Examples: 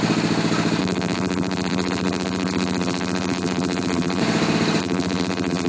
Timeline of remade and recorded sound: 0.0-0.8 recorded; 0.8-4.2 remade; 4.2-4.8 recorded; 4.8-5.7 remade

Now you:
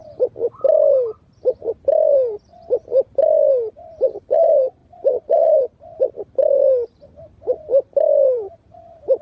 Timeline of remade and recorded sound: 0.0-1.8 recorded; 1.8-9.2 remade

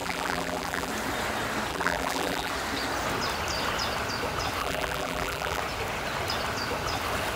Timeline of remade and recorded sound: 0.0-0.9 remade; 0.9-1.7 recorded; 1.7-2.5 remade; 2.5-4.6 recorded; 4.6-5.6 remade; 5.6-7.4 recorded